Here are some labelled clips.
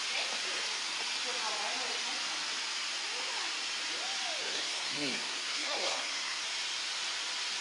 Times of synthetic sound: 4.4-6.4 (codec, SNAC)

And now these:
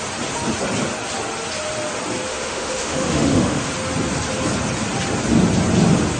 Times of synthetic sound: 2.3-3.7 (autoencoder, DAC-VAE)

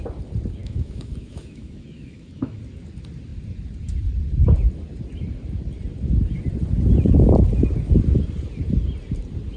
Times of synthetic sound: 0.6-2.6 (autoencoder, DAC-VAE)

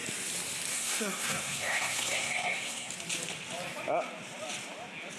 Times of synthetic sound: 0.7-2.9 (codec, SNAC)

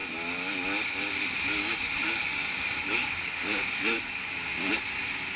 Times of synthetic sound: 1.6-4.8 (codec, DAC)

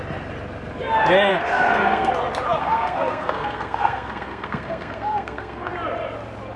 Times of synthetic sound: 1.3-2.1 (codec, SNAC); 2.6-5.7